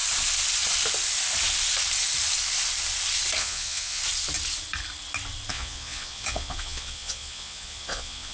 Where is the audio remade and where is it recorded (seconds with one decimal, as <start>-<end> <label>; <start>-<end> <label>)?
0.0-3.4 recorded; 3.4-4.0 remade; 4.0-5.5 recorded; 5.5-8.3 remade